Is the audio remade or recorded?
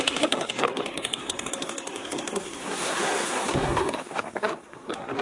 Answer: remade